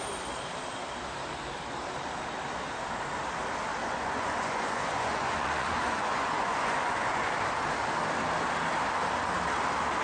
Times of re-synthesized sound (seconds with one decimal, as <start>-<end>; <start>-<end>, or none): 3.8-7.3